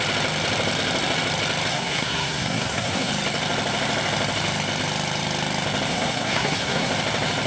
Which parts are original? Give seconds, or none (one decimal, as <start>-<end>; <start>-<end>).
0.0-1.7; 3.1-5.9; 6.9-7.5

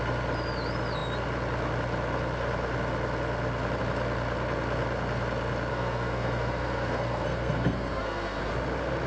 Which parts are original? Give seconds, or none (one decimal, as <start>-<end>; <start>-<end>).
0.0-5.7; 8.5-9.1

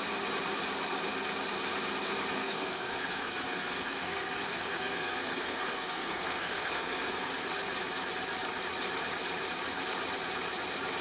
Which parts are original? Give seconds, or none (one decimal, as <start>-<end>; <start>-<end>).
0.0-2.4; 7.3-11.0

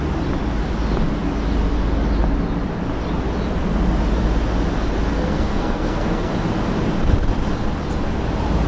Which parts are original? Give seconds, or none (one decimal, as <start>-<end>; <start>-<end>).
0.0-5.1; 6.3-8.7

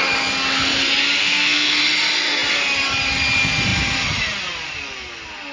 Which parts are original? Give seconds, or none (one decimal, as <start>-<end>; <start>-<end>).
0.0-1.2; 1.8-5.5